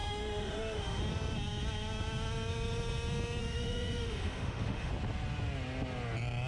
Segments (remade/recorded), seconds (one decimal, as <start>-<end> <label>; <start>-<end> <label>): 0.0-1.0 remade; 1.0-3.4 recorded; 3.4-4.9 remade; 4.9-6.5 recorded